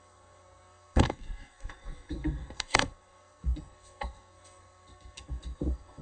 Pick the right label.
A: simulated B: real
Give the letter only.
A